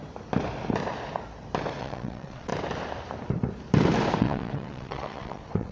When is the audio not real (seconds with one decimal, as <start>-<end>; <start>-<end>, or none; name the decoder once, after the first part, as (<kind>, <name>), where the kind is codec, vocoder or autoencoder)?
1.8-2.5 (vocoder, WaveNeXt); 4.2-5.7